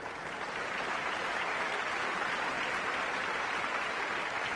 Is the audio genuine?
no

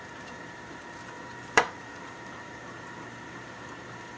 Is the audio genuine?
no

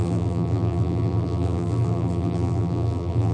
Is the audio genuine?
no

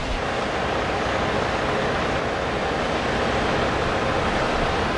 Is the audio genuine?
yes